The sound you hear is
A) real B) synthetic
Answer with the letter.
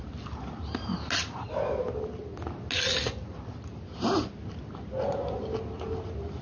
A